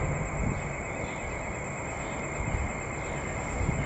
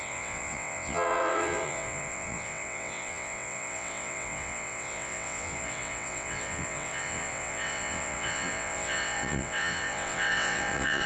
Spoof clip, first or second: second